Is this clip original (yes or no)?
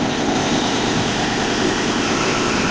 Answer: no